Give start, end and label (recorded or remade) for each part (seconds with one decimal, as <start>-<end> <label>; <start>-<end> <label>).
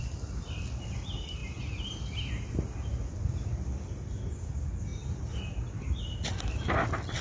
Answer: 0.0-7.2 recorded